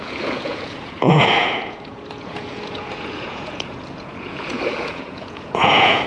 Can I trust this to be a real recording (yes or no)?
no